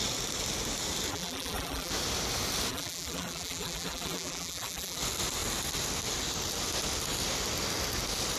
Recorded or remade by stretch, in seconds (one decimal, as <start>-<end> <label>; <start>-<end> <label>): 0.0-1.1 recorded; 1.1-1.9 remade; 1.9-2.7 recorded; 2.7-5.0 remade; 5.0-8.4 recorded